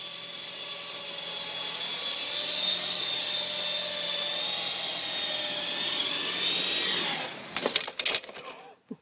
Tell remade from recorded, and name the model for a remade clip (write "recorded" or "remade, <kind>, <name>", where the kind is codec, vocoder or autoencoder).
recorded